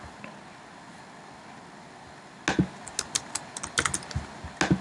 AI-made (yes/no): no